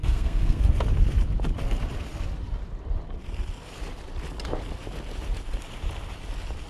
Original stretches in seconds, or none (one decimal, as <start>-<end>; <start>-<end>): 0.6-6.7